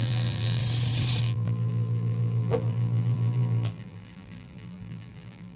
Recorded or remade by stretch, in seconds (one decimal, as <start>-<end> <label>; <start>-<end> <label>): 0.0-0.6 remade; 0.6-1.2 recorded; 1.2-5.6 remade